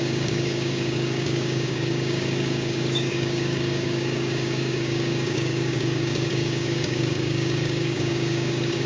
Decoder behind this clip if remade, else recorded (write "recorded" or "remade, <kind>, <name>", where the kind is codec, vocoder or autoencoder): remade, codec, DAC